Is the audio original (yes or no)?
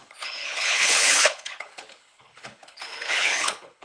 no